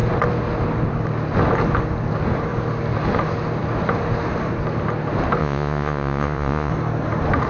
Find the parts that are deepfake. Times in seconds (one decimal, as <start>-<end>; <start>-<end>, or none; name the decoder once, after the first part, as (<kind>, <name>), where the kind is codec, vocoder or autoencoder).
5.4-6.7 (vocoder, Vocos)